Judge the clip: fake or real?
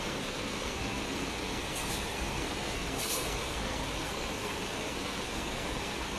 fake